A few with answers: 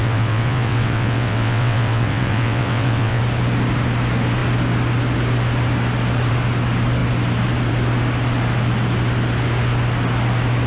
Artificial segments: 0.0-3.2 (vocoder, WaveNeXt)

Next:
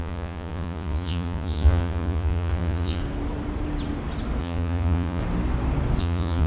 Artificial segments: 0.0-3.0 (vocoder, Vocos); 4.4-5.2; 6.0-6.5

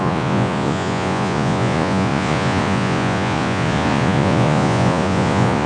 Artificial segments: 0.0-5.7 (vocoder, Vocos)

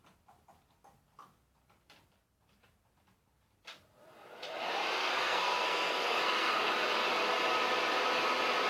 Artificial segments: 5.0-6.7 (codec, SNAC)

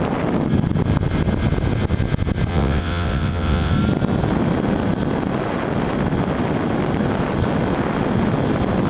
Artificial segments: 2.5-3.7 (vocoder, WaveNeXt)